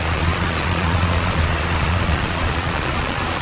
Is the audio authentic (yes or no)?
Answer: no